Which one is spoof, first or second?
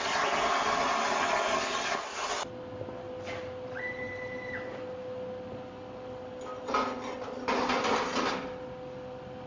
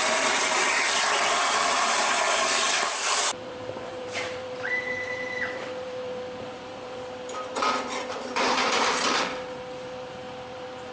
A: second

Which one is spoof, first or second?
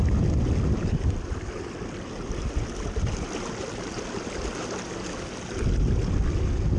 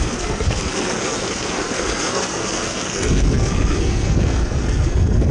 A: second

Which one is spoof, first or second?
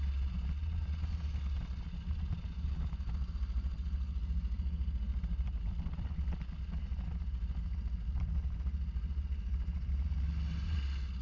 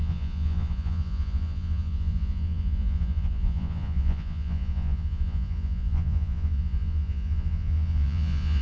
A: second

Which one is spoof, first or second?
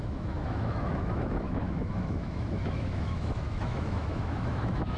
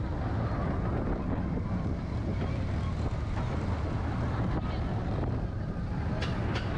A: first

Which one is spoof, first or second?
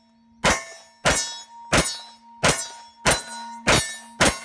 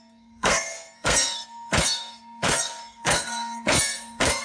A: second